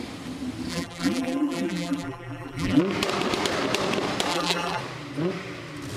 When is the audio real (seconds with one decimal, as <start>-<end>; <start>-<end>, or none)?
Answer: 0.0-0.7; 2.8-4.3; 4.8-6.0